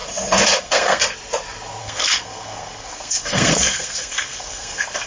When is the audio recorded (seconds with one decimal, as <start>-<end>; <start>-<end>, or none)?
0.0-0.6; 1.0-1.8